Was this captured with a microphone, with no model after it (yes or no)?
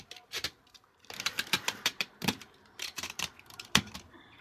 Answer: no